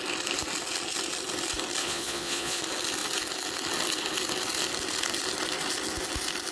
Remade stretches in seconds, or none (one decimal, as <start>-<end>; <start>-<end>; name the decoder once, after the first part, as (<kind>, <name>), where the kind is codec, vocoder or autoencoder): 1.8-2.6 (vocoder, Vocos)